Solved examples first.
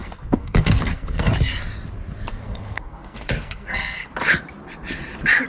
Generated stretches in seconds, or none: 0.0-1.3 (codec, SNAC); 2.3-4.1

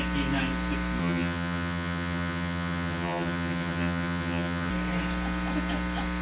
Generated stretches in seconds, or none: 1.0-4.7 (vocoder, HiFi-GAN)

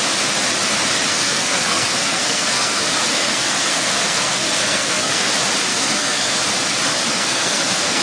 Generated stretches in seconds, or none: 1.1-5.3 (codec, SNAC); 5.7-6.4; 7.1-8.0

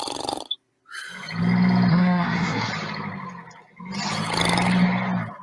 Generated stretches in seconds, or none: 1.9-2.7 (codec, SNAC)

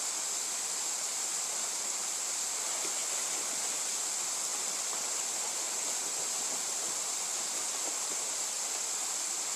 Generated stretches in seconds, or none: none

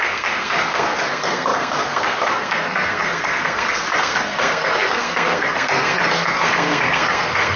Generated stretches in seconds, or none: 0.0-7.6 (codec, SNAC)

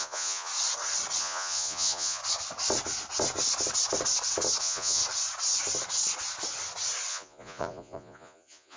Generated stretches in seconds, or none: 0.0-0.5 (vocoder, Vocos); 1.2-2.2; 4.6-5.0; 7.1-8.8

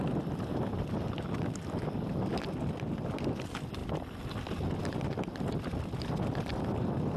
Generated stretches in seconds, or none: none